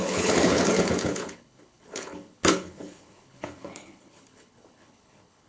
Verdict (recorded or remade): remade